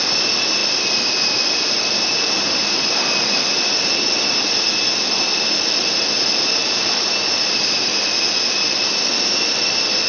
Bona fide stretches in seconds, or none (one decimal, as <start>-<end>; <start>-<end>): 0.0-10.1